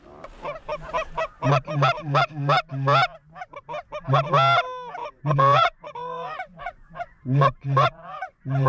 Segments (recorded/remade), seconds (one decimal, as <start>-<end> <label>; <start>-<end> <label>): 0.0-5.0 recorded; 5.0-8.7 remade